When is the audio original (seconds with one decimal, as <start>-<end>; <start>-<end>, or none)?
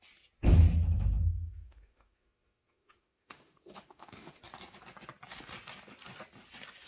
0.0-1.3; 4.4-6.9